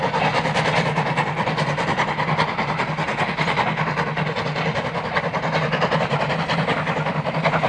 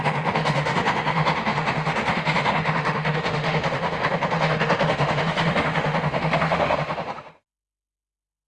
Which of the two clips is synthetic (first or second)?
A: second